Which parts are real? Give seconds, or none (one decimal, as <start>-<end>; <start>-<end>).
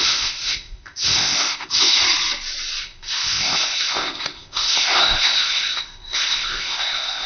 2.0-2.8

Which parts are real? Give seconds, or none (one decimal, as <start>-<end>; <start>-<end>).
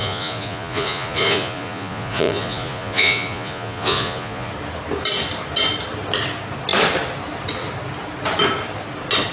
4.5-9.3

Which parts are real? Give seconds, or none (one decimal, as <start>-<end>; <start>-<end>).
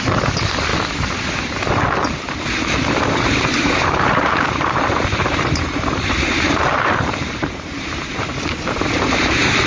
0.0-3.5; 8.3-9.7